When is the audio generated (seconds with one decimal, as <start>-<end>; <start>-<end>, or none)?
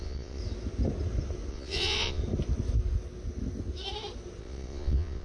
0.0-0.4; 1.5-2.2; 4.4-5.2